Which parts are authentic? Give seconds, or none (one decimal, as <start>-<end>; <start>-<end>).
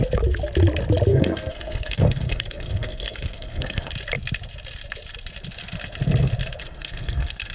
0.0-1.1; 3.9-6.6